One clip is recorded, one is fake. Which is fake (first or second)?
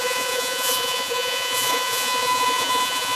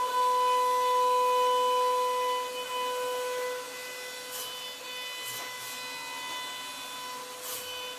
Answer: first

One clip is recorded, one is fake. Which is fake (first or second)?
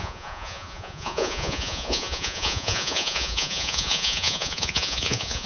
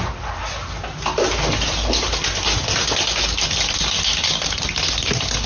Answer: first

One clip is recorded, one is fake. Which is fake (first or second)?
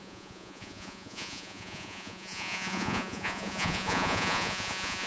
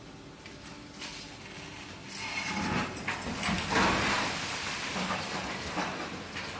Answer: first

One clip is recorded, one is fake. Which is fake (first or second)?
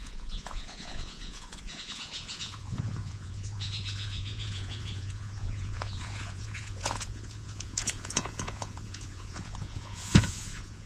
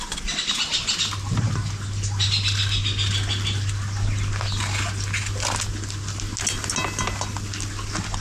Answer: first